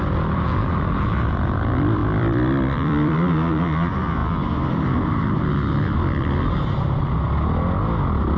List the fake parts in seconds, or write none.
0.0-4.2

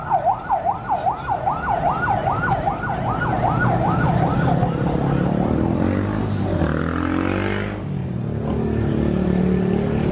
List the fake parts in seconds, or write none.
2.2-2.9; 8.0-9.4